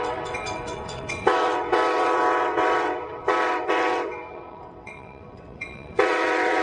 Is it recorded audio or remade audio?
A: remade